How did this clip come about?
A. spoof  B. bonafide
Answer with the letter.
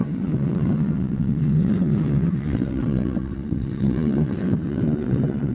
A